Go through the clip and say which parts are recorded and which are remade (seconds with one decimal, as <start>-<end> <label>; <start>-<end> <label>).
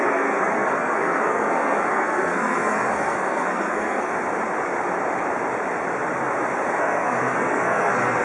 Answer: 0.0-4.1 remade; 4.1-6.8 recorded; 6.8-8.2 remade